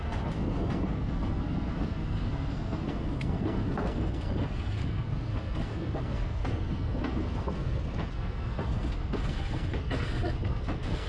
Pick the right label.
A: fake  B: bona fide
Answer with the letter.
A